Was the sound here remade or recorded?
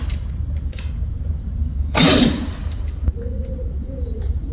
remade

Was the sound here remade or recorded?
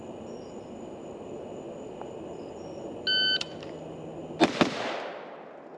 recorded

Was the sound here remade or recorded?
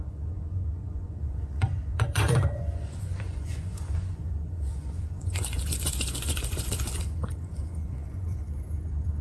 remade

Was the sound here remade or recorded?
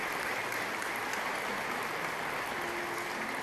recorded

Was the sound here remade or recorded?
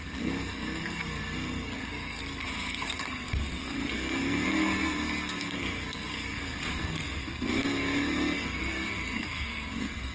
remade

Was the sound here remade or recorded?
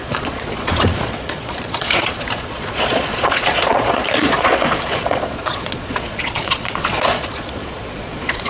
remade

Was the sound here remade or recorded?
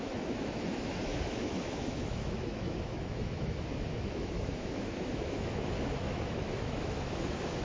remade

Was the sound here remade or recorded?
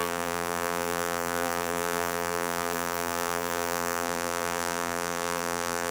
remade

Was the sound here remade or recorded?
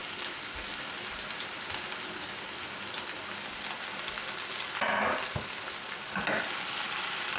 recorded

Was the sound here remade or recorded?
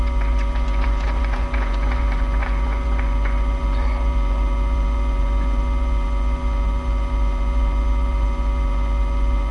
remade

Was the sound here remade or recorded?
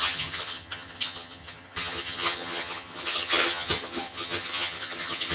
remade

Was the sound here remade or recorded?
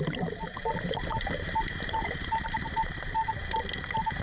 remade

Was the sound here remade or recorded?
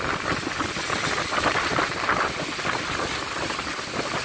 recorded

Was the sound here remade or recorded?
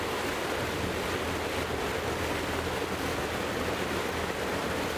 recorded